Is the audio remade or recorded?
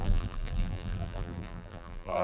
remade